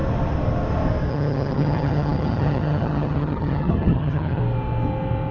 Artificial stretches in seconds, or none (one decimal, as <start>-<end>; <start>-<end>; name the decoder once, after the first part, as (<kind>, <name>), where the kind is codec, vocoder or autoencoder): 1.1-4.4 (vocoder, HiFi-GAN)